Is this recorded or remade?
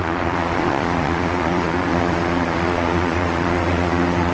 remade